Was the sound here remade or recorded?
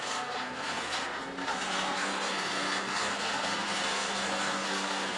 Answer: remade